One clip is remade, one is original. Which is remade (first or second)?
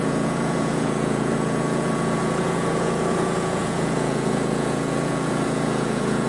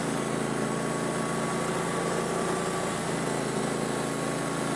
first